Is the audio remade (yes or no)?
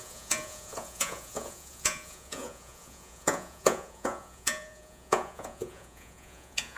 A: yes